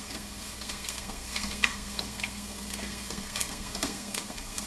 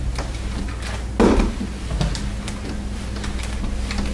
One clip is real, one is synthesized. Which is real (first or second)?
second